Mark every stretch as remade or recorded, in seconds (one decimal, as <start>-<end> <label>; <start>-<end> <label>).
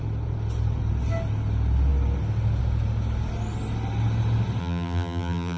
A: 0.0-4.6 recorded; 4.6-5.6 remade